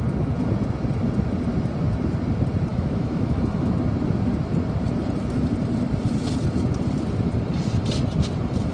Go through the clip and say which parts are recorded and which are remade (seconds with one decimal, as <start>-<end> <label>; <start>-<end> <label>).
0.0-2.7 recorded; 2.7-3.7 remade; 3.7-8.7 recorded